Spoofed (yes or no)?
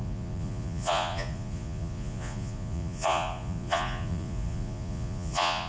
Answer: yes